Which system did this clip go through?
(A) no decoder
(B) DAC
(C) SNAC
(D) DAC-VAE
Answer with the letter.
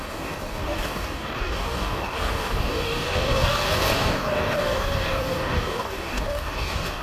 B